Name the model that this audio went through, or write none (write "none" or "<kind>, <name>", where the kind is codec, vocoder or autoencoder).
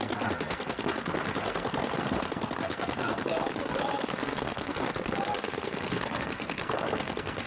codec, SNAC